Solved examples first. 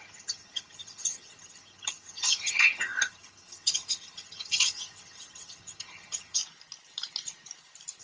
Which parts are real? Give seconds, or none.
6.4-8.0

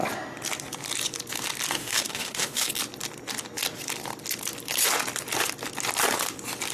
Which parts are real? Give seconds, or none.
0.0-1.8; 2.7-6.7

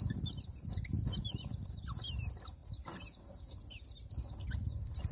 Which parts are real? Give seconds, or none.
0.0-5.1